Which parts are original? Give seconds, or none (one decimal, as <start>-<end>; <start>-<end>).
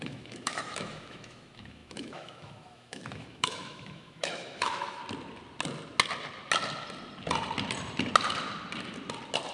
5.0-9.5